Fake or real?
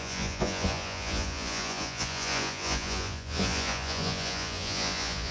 fake